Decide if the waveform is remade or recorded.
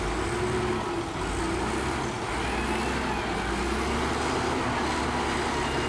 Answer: recorded